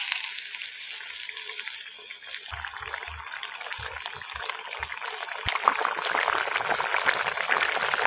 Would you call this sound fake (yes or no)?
no